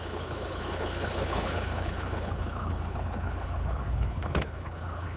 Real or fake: fake